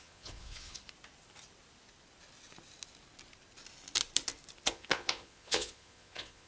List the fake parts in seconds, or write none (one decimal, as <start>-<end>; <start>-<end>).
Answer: 0.0-0.8; 4.7-6.5